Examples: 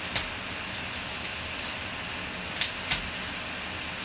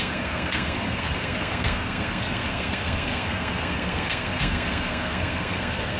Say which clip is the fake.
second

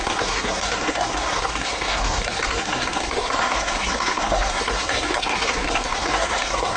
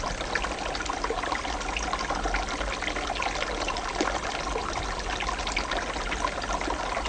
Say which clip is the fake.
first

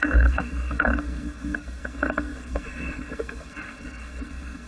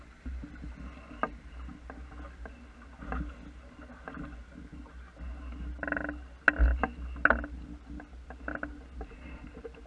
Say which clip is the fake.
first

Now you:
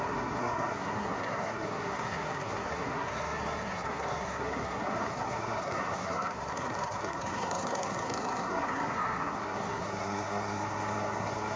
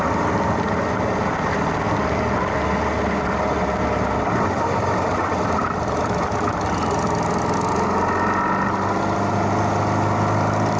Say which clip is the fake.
first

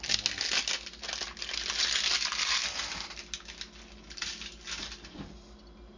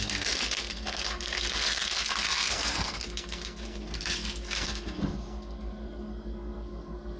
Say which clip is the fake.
second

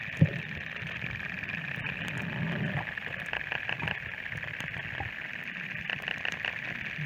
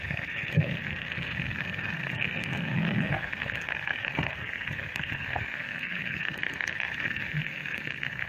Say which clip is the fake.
second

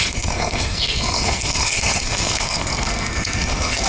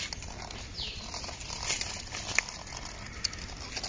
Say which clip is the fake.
first